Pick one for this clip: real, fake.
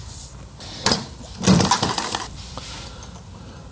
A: real